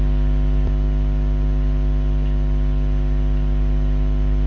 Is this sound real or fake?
real